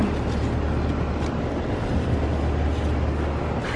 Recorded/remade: recorded